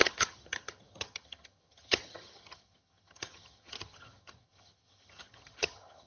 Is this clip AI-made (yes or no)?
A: yes